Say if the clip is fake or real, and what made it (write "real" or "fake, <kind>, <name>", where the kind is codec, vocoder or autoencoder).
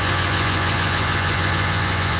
fake, vocoder, Vocos